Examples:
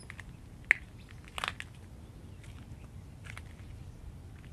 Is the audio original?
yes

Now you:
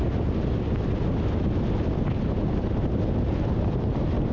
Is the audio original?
yes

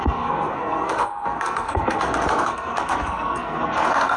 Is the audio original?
no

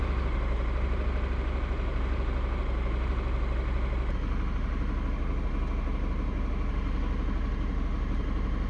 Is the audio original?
yes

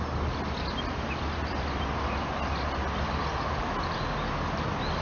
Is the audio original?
yes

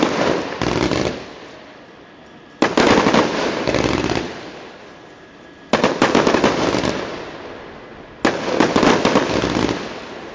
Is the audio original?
yes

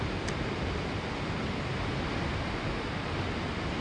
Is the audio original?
yes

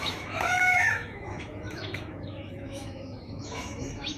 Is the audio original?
no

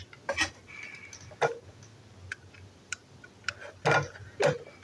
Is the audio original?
yes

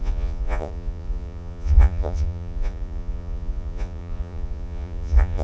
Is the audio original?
no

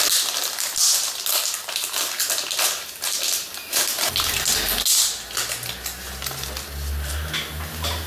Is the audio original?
yes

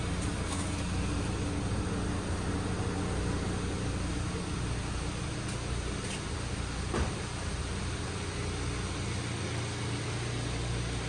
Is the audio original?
yes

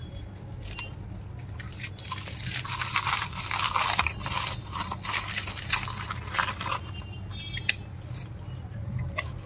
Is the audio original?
yes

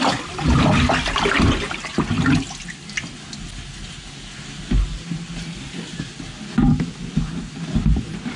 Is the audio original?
yes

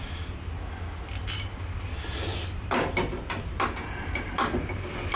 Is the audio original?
yes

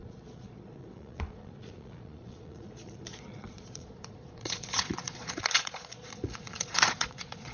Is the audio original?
no